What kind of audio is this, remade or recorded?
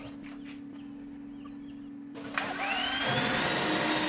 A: recorded